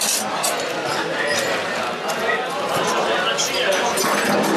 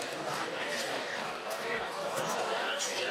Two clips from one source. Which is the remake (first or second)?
second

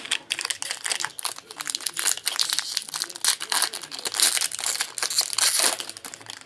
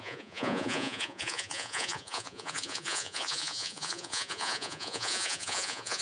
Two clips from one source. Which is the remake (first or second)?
second